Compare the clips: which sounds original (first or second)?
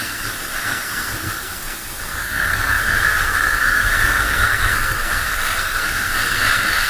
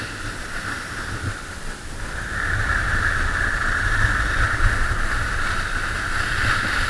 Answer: second